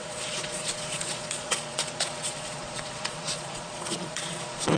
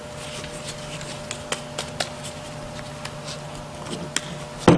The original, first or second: second